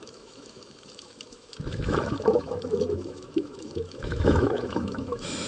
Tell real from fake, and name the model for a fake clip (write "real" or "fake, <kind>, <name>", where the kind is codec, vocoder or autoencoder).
fake, autoencoder, DAC-VAE